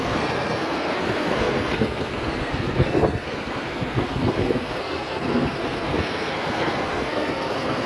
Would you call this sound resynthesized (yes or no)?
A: yes